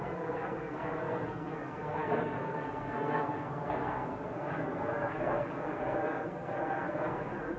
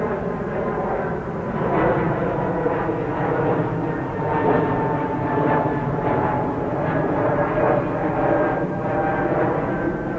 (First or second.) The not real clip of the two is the first